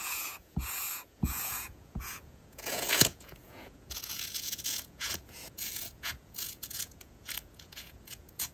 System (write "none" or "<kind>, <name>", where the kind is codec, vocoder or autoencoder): vocoder, Vocos